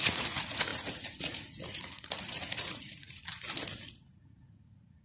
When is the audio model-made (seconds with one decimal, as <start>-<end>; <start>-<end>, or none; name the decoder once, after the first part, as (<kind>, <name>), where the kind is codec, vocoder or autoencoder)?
0.0-3.3 (vocoder, Vocos); 4.1-5.0

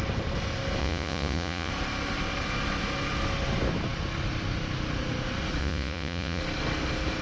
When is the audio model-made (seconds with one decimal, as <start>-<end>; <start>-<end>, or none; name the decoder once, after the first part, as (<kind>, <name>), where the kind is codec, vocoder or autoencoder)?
0.8-1.7 (vocoder, Vocos); 5.6-6.4

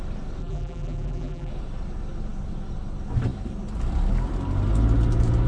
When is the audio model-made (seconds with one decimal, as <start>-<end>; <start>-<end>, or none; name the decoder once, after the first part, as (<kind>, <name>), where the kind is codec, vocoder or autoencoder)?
0.4-1.5 (vocoder, BigVGAN v2)

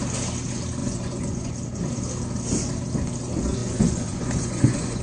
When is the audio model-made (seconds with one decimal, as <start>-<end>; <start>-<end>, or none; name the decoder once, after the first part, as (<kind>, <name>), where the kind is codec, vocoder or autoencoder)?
0.8-1.5 (vocoder, Vocos); 3.6-5.0